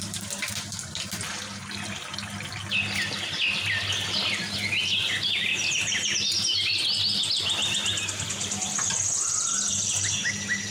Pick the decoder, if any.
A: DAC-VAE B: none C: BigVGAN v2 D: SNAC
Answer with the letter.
B